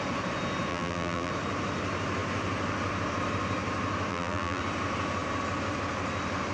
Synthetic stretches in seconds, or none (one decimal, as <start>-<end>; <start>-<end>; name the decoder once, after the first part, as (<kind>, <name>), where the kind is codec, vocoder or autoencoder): 0.7-1.3 (vocoder, BigVGAN v2); 4.1-4.6